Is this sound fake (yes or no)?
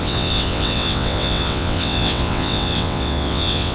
yes